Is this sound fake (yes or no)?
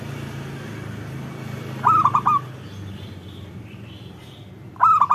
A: no